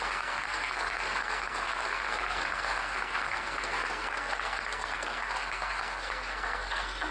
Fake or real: fake